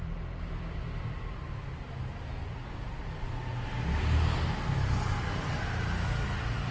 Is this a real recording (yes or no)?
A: yes